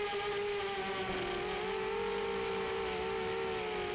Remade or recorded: recorded